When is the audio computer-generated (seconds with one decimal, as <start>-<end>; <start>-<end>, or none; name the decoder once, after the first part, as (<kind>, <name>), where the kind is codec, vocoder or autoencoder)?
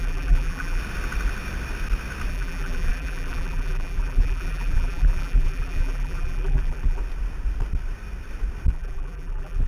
0.0-0.8 (vocoder, BigVGAN v2); 2.3-7.0; 8.7-9.7